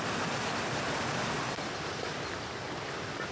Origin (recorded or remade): remade